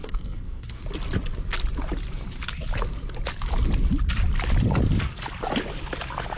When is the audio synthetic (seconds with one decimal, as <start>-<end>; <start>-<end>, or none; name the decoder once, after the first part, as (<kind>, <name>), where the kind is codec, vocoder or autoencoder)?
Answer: 0.0-0.8 (codec, SNAC)